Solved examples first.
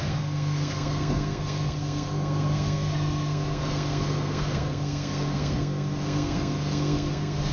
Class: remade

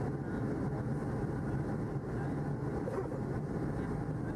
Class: recorded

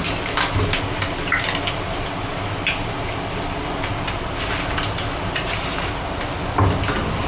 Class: recorded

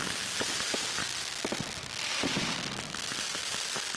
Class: recorded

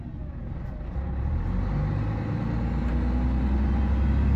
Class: recorded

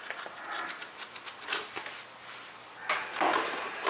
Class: recorded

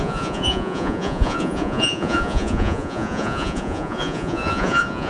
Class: remade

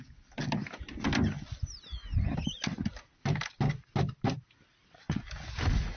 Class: recorded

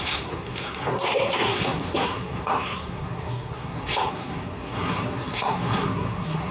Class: remade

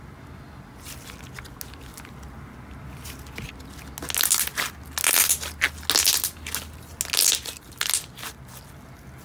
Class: recorded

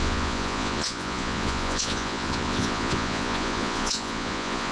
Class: remade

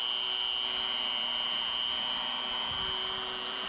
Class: recorded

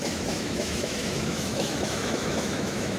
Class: remade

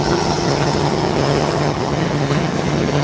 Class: remade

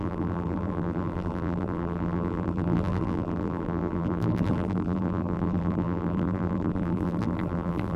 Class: remade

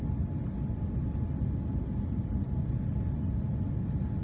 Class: recorded